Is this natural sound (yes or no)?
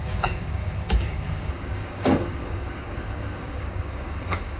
no